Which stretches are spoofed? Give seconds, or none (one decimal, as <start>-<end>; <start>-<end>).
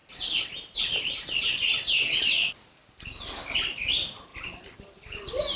4.3-5.0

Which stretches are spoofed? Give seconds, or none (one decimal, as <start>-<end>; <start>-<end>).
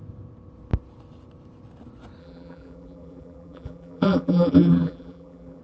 2.2-5.6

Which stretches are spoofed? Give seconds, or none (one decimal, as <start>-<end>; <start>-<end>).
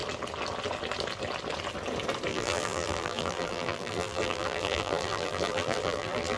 2.3-6.4